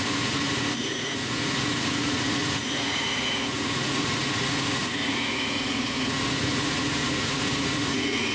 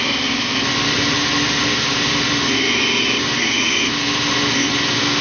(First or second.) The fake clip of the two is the first